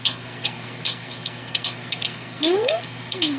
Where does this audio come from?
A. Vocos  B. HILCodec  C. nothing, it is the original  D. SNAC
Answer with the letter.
D